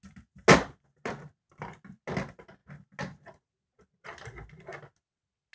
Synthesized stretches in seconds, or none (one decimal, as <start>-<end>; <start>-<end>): none